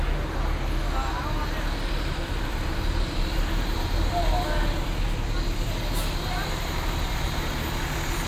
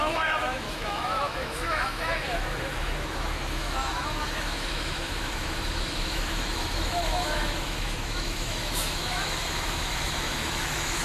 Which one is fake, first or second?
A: second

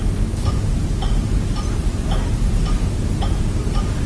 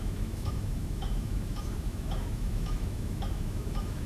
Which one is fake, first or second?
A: second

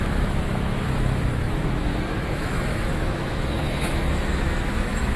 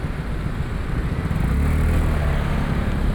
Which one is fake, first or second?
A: first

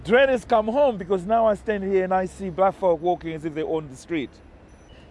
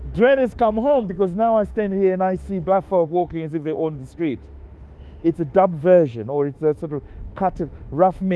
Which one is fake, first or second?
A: second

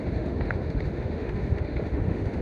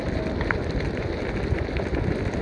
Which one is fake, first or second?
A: first